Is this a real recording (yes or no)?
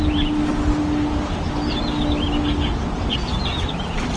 yes